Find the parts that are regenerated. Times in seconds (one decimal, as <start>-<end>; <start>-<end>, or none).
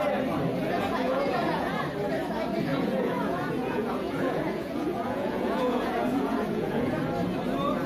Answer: 0.6-1.8; 2.7-7.0